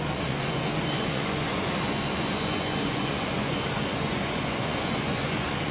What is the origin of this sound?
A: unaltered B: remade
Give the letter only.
B